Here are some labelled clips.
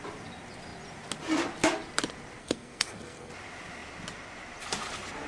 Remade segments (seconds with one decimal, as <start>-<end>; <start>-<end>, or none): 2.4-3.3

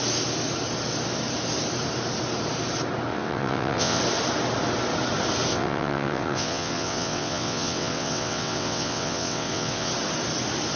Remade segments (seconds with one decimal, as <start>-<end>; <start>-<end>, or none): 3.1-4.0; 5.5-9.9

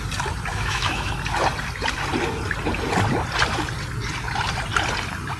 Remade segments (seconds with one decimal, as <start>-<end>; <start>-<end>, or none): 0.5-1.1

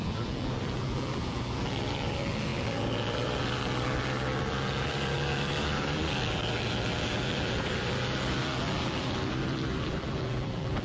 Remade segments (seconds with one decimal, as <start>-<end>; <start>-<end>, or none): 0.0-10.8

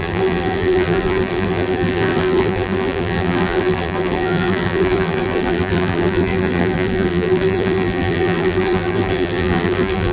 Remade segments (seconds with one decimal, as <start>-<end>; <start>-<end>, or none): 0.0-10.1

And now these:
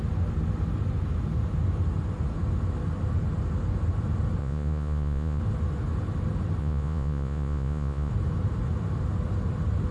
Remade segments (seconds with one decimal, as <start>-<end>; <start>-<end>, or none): 4.4-5.4; 6.6-8.1